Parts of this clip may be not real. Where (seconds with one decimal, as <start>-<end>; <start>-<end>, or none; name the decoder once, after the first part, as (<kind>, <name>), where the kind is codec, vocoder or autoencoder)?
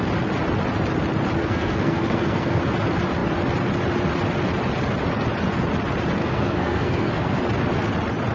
1.4-2.6 (codec, SNAC); 6.2-7.4